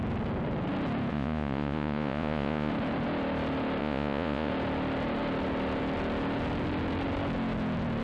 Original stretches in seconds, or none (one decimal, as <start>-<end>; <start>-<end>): 0.0-1.1; 2.7-3.8; 4.5-8.0